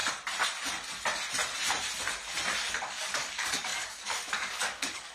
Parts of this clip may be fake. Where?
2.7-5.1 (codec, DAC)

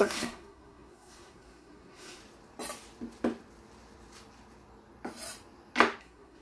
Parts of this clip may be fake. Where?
0.0-2.2 (codec, SNAC); 6.0-6.4

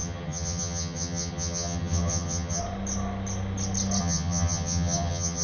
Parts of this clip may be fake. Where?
0.0-2.6 (vocoder, HiFi-GAN); 4.0-5.4